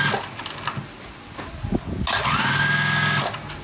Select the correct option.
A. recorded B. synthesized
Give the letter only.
A